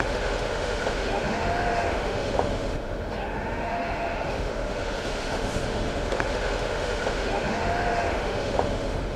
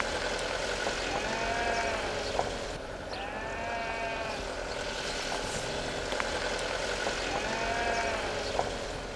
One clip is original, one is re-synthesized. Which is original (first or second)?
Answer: second